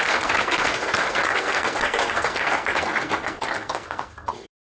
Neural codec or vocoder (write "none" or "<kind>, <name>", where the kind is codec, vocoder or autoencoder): codec, SNAC